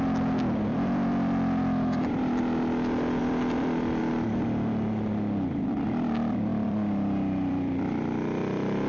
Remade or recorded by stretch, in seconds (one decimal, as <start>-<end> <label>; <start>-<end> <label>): 0.0-0.7 recorded; 0.7-2.4 remade; 2.4-3.2 recorded; 3.2-4.0 remade; 4.0-6.5 recorded; 6.5-8.9 remade